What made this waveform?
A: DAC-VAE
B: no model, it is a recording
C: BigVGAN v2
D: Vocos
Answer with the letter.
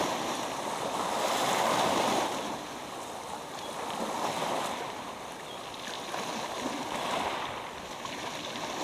B